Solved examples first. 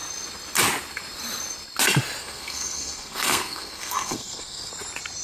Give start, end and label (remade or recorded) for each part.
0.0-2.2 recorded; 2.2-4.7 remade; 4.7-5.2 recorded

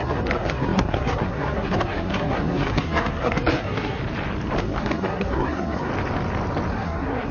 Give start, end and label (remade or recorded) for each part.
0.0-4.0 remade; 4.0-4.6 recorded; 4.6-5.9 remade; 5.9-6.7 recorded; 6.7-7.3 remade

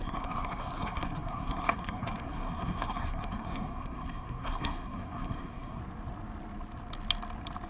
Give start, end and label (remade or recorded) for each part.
0.0-5.8 remade; 5.8-7.7 recorded